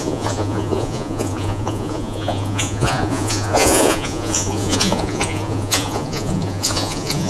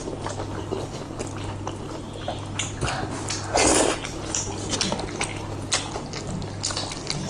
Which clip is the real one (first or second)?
second